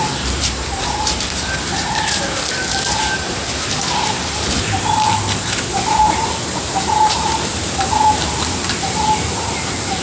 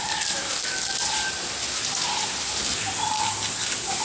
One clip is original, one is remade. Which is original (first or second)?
second